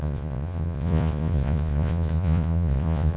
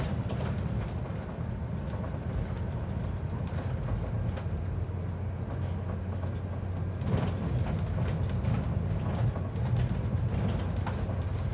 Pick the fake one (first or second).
first